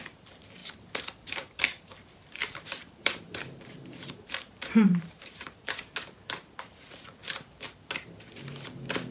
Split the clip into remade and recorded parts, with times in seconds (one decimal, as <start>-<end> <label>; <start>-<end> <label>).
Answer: 0.0-0.6 recorded; 0.6-5.9 remade; 5.9-9.1 recorded